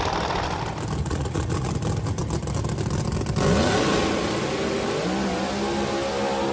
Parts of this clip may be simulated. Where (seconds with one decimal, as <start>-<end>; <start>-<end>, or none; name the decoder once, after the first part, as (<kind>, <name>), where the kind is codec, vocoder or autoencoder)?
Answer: 1.0-1.7 (vocoder, Vocos)